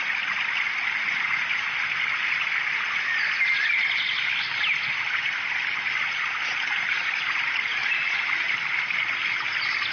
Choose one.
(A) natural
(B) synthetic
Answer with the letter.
A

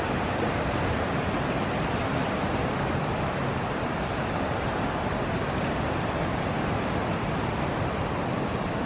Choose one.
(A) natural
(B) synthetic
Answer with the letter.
A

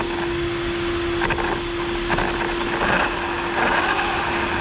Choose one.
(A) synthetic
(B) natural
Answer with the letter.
B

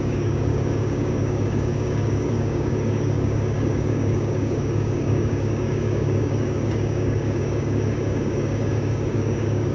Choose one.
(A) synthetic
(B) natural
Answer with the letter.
A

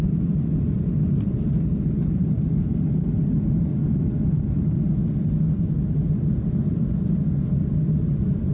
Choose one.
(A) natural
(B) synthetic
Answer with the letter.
A